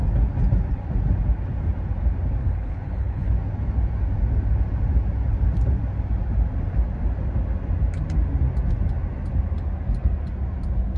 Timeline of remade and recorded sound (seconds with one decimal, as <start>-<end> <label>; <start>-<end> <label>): 0.0-2.4 recorded; 2.4-3.3 remade; 3.3-11.0 recorded